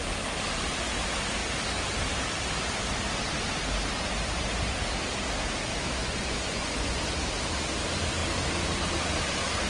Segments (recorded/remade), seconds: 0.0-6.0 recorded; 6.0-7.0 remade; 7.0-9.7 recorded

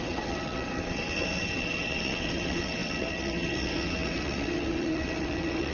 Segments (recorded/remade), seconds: 0.0-5.7 remade

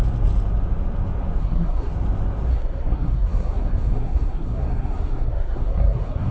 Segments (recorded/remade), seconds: 0.0-1.4 recorded; 1.4-1.9 remade; 1.9-2.5 recorded; 2.5-6.3 remade

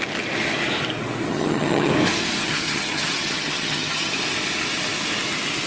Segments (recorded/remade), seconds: 0.0-1.3 recorded; 1.3-1.9 remade; 1.9-2.4 recorded; 2.4-4.1 remade; 4.1-5.7 recorded

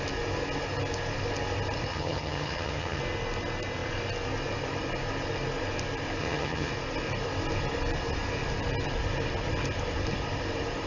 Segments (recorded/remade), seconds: 0.0-1.9 recorded; 1.9-3.0 remade; 3.0-6.2 recorded; 6.2-6.7 remade; 6.7-10.9 recorded

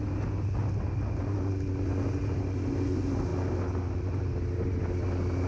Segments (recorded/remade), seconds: 0.0-5.5 recorded